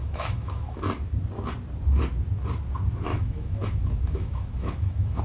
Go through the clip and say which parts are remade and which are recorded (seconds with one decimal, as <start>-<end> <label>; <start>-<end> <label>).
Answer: 0.0-0.8 remade; 0.8-3.1 recorded; 3.1-5.2 remade